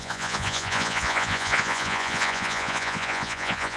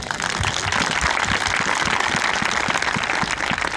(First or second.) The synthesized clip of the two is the first